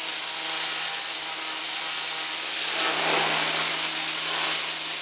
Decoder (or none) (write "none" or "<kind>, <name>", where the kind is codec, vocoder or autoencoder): none